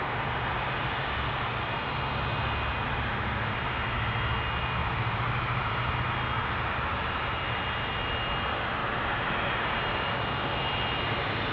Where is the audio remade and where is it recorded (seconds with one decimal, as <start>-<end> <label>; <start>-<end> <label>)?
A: 0.0-4.8 recorded; 4.8-5.9 remade; 5.9-8.8 recorded; 8.8-10.2 remade; 10.2-11.5 recorded